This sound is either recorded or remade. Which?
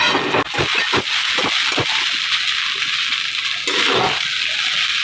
recorded